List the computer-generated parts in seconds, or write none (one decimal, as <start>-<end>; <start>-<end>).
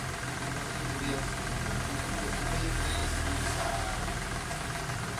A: none